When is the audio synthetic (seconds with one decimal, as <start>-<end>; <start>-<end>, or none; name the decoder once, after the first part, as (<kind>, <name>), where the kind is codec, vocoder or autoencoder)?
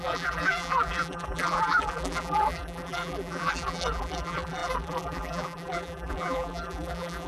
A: 0.0-7.3 (vocoder, BigVGAN v2)